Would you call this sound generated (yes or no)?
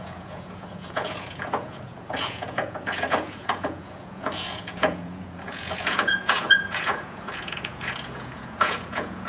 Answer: yes